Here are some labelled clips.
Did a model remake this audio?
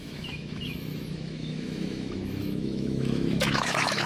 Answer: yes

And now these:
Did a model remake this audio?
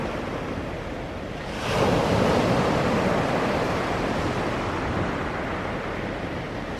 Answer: no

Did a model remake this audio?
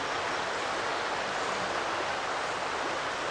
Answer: no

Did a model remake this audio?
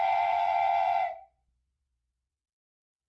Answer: yes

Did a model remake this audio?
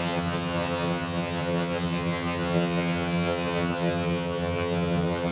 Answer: yes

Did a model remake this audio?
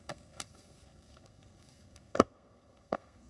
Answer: yes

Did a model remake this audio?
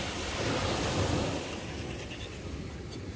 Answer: no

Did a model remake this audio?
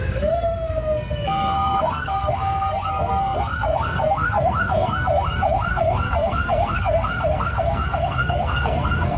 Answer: yes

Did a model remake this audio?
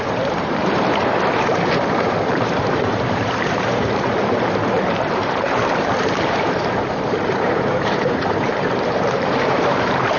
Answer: yes